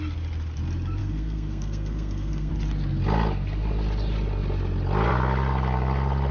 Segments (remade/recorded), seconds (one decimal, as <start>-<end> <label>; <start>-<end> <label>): 0.0-1.0 recorded; 1.0-2.5 remade; 2.5-6.3 recorded